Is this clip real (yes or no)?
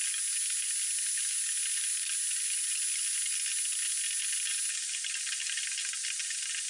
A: yes